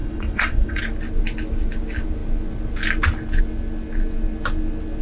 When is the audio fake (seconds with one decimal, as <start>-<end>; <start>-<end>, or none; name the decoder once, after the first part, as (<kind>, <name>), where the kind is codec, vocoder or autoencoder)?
0.0-0.8 (vocoder, WaveNeXt)